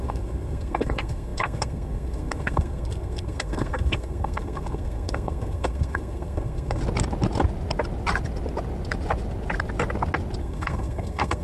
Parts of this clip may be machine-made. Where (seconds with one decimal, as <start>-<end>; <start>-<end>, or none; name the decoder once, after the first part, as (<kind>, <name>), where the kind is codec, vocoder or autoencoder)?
0.0-6.8 (codec, SNAC); 10.4-11.4